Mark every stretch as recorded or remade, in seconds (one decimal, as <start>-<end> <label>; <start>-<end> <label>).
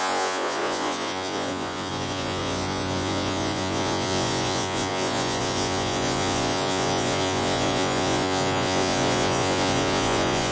0.0-10.5 remade